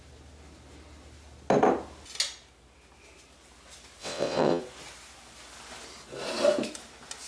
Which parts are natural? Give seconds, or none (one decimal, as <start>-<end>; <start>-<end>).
0.0-4.0; 4.6-7.3